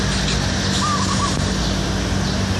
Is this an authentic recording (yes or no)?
yes